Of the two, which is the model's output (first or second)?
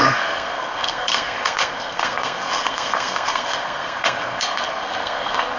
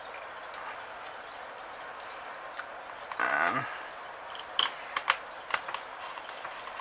first